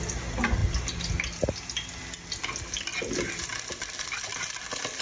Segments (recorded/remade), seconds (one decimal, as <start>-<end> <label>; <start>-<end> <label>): 0.0-5.0 recorded